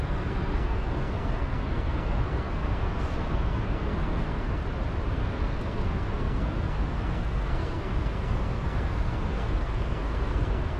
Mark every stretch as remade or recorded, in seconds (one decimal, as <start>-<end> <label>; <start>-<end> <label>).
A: 0.0-4.6 remade; 4.6-5.1 recorded; 5.1-10.8 remade